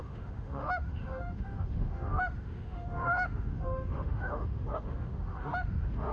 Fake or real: fake